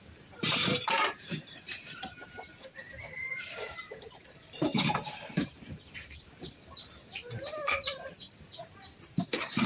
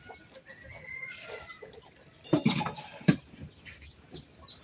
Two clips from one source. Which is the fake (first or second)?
first